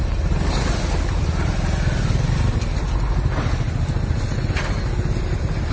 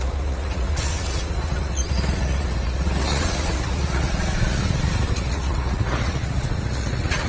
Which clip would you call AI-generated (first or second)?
second